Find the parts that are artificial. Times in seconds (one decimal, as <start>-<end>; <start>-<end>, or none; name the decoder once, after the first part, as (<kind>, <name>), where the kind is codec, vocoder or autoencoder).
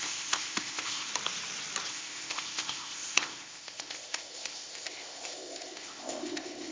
0.0-1.1 (codec, ZipCodec); 1.9-6.7